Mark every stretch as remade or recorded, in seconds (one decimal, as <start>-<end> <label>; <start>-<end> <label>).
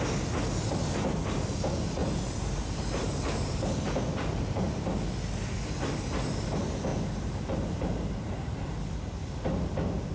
0.0-2.0 recorded; 2.0-4.7 remade; 4.7-6.9 recorded; 6.9-8.5 remade; 8.5-10.1 recorded